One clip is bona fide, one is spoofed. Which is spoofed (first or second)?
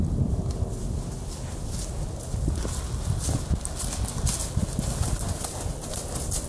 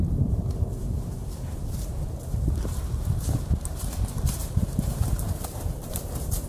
second